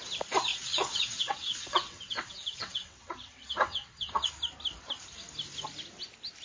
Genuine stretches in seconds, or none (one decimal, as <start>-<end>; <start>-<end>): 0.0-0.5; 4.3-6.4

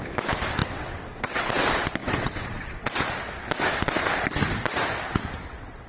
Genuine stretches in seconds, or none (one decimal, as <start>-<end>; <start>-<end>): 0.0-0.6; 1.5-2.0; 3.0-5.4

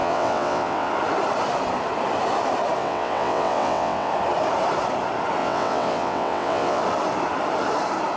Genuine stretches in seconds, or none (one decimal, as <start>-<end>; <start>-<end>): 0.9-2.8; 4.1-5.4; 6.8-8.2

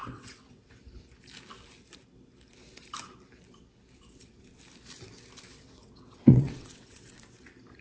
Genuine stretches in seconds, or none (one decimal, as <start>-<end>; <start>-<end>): 0.8-5.5; 7.1-7.8

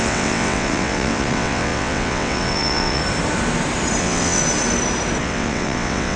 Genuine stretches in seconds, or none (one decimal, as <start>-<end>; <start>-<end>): 3.0-4.0; 4.4-5.2

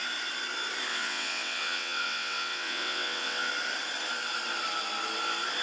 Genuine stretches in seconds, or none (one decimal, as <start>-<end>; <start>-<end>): 0.0-0.9; 3.5-5.6

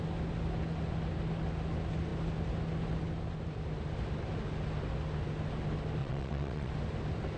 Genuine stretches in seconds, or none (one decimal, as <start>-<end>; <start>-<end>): 0.0-6.0; 6.7-7.4